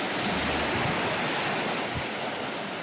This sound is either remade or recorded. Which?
recorded